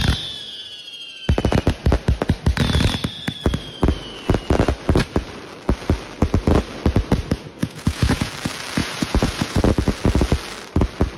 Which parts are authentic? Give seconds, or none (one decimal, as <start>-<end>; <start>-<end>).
0.0-7.6; 8.3-8.8; 9.6-11.2